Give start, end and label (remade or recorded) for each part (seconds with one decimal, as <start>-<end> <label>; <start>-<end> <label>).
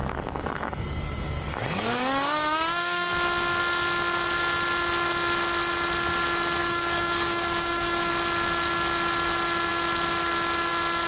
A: 0.0-3.1 remade; 3.1-6.6 recorded; 6.6-8.1 remade; 8.1-11.1 recorded